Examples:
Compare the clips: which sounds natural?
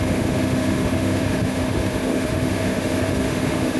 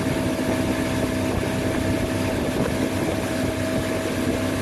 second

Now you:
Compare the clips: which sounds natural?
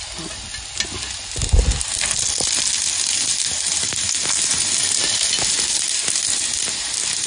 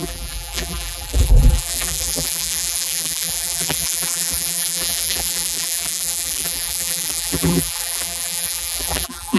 first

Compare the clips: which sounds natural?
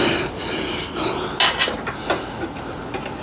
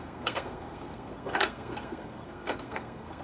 first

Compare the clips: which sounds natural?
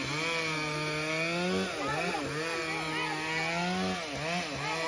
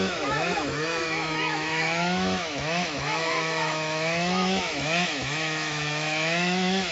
first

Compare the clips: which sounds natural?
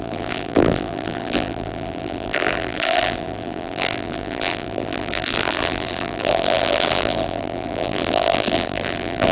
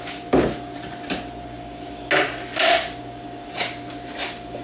second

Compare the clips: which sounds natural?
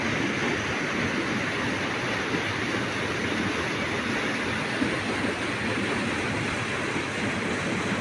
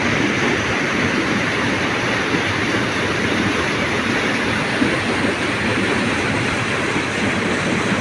first